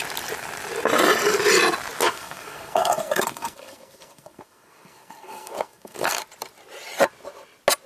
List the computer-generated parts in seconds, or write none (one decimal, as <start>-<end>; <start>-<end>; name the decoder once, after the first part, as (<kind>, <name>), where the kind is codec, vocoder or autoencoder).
2.0-6.2 (codec, SNAC)